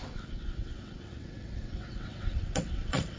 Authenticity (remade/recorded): remade